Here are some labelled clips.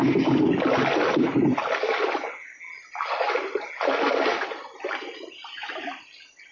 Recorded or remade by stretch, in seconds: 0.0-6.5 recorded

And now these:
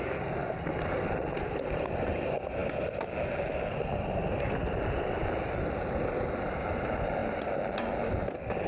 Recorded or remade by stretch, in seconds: 0.0-8.7 recorded

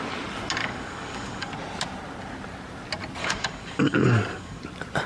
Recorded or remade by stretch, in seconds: 0.0-0.6 recorded; 0.6-1.5 remade; 1.5-3.2 recorded; 3.2-4.6 remade; 4.6-5.1 recorded